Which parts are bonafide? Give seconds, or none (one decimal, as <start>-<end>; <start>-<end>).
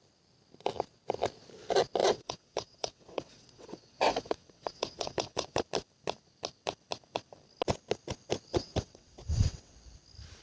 0.0-2.0; 5.6-8.5; 9.7-10.4